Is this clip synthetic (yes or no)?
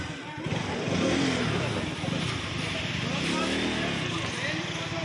no